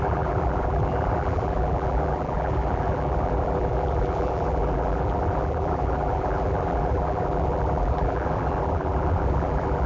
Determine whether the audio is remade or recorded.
remade